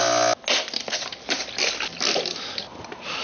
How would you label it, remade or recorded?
recorded